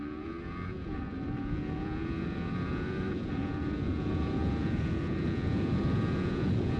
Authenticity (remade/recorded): remade